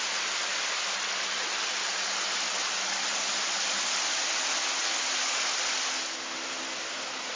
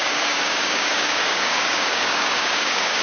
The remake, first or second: second